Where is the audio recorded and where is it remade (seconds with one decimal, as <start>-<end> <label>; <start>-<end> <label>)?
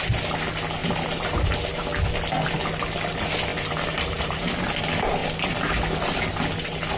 0.0-0.8 recorded; 0.8-1.8 remade; 1.8-3.5 recorded; 3.5-4.5 remade; 4.5-7.0 recorded